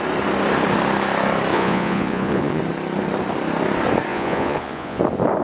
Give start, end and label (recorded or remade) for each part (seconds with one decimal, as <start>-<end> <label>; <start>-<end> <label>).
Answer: 0.0-1.5 recorded; 1.5-2.6 remade; 2.6-4.1 recorded; 4.1-5.0 remade; 5.0-5.4 recorded

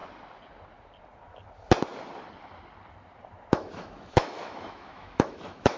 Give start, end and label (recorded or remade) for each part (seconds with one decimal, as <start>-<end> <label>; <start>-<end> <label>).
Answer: 0.0-3.5 recorded; 3.5-5.8 remade

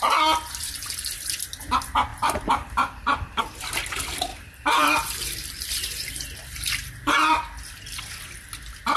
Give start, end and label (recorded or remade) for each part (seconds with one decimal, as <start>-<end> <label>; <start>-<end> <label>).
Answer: 0.0-2.1 recorded; 2.1-3.4 remade; 3.4-4.3 recorded; 4.3-8.0 remade; 8.0-9.0 recorded

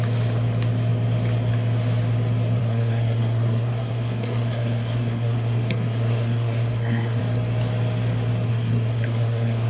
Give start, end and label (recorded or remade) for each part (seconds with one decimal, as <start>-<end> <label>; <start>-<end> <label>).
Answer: 0.0-2.6 recorded; 2.6-7.2 remade; 7.2-8.5 recorded; 8.5-9.7 remade